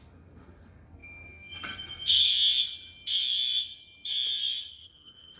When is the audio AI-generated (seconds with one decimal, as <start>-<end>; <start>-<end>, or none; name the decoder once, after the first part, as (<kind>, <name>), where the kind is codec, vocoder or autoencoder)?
0.0-2.3 (codec, SNAC); 4.7-5.4